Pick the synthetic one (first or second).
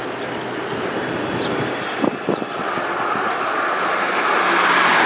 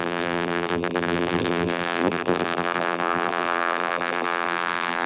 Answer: second